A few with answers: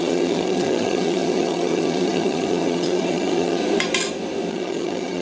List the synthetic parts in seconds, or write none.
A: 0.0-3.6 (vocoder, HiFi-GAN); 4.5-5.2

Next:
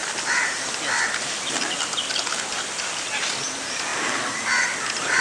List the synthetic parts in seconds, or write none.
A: none